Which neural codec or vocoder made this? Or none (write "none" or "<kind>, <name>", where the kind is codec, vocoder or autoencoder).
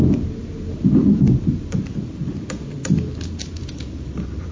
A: none